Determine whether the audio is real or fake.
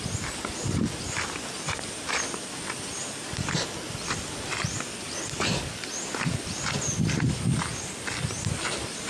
real